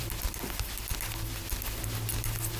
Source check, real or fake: real